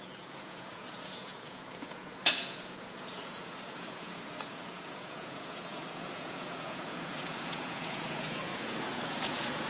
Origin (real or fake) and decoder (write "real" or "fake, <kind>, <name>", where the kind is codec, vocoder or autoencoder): fake, vocoder, Vocos